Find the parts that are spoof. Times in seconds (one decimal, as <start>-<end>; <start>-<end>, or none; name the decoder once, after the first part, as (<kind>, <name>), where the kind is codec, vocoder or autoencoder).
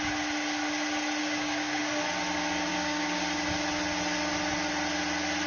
1.2-1.8 (codec, DAC); 2.7-3.2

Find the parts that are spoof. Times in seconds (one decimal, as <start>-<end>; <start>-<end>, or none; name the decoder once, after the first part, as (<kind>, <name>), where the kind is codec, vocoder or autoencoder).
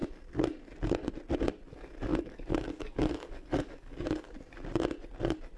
2.1-4.0 (codec, DAC)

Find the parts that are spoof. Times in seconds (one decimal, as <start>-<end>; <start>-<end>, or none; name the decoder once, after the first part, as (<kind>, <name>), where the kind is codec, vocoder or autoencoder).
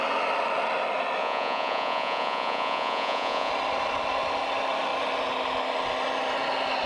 1.2-3.5 (vocoder, Vocos)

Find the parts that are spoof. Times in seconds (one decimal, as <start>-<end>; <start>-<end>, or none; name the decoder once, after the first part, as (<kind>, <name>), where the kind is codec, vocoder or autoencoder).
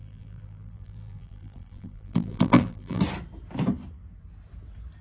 0.0-3.0 (vocoder, BigVGAN v2)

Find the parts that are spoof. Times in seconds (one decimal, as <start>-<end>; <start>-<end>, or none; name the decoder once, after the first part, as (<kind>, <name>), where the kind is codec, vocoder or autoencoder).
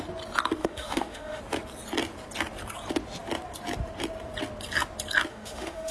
0.6-1.4 (autoencoder, DAC-VAE); 5.3-5.9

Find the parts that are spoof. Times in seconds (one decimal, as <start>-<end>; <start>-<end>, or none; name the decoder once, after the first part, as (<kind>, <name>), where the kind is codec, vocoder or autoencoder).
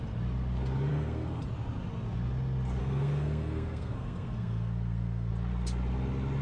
0.9-1.4 (codec, SNAC); 2.8-5.3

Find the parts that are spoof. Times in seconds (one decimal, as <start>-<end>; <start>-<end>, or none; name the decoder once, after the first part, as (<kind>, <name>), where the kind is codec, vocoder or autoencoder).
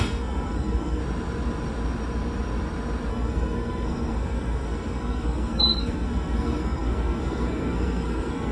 0.0-1.0 (codec, SNAC); 3.1-8.5